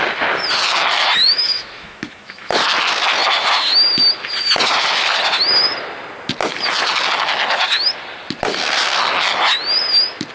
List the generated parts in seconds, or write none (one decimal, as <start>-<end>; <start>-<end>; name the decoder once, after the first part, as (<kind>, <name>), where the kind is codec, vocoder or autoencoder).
1.2-2.5 (autoencoder, DAC-VAE)